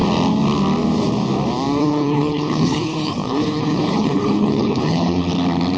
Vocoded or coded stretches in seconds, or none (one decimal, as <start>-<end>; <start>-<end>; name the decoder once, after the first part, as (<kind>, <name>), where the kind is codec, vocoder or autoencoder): 1.8-5.3 (codec, HILCodec)